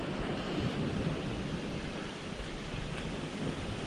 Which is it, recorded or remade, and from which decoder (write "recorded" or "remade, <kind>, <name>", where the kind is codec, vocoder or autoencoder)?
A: recorded